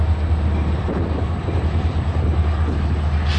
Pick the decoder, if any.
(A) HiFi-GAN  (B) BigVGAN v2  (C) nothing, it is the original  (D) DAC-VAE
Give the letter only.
C